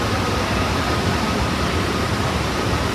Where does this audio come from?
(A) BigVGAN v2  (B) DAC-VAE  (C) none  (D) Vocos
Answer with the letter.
A